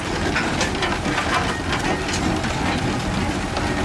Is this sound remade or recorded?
recorded